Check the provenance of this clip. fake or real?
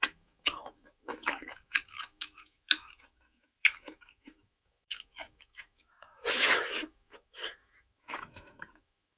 fake